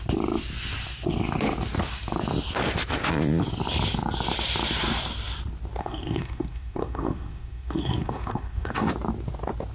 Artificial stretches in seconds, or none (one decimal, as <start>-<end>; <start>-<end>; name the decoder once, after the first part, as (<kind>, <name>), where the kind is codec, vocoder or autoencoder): 5.8-8.9 (codec, SNAC)

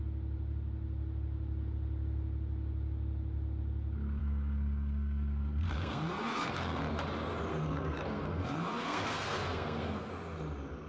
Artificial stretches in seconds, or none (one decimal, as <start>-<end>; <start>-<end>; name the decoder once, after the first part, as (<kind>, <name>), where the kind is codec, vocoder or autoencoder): 4.2-6.8 (codec, SNAC); 7.5-10.1

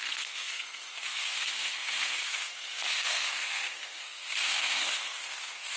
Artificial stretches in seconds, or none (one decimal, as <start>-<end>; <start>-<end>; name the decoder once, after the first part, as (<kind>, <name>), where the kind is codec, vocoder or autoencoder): 0.0-5.8 (codec, SNAC)

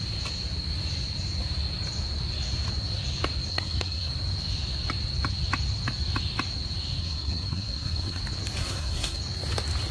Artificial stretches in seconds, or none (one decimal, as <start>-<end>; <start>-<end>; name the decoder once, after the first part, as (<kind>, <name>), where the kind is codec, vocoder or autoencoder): 3.5-4.1 (codec, SNAC); 7.0-8.2; 8.6-9.2

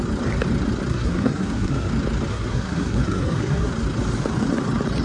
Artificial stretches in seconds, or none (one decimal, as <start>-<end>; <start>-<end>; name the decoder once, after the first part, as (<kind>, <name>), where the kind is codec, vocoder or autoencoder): 0.9-1.9 (codec, SNAC); 2.3-3.7